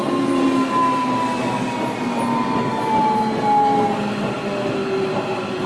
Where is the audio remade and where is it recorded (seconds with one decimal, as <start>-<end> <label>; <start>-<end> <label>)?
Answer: 0.0-5.7 recorded